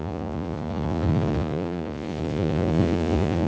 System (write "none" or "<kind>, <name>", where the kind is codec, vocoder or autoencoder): vocoder, Vocos